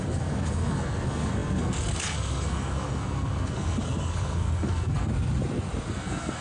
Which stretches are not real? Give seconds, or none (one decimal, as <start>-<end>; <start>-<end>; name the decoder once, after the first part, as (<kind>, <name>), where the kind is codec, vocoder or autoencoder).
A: 0.0-5.1 (codec, SNAC); 5.9-6.4